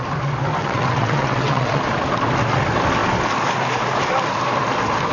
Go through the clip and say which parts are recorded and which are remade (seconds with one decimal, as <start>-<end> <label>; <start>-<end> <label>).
0.0-0.6 recorded; 0.6-1.8 remade; 1.8-5.1 recorded